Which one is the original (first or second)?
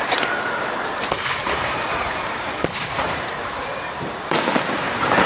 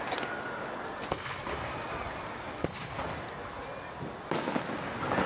second